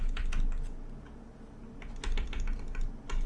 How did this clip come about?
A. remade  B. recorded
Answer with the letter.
B